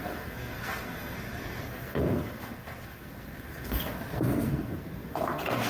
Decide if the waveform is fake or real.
fake